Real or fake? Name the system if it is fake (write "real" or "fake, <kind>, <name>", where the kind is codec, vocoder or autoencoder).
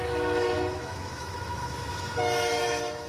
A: fake, autoencoder, DAC-VAE